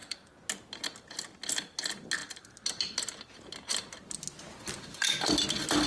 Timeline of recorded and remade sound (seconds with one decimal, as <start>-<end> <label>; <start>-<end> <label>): 0.0-5.9 recorded